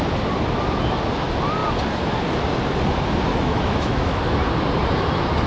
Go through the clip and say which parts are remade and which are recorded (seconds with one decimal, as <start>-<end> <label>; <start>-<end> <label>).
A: 0.0-3.3 recorded; 3.3-4.2 remade; 4.2-5.5 recorded